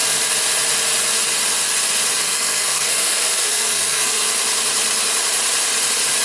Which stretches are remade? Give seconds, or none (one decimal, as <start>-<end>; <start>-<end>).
2.2-4.3